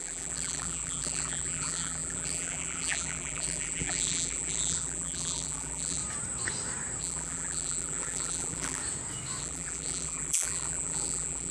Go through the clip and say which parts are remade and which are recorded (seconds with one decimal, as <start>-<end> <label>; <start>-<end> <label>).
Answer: 0.0-6.0 remade; 6.0-7.0 recorded; 7.0-8.8 remade; 8.8-9.4 recorded; 9.4-11.5 remade